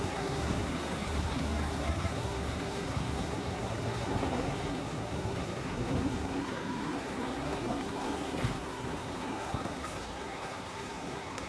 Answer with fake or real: fake